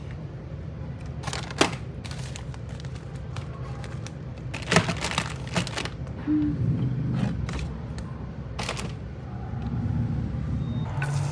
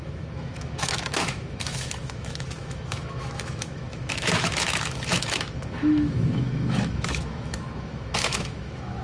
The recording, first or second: first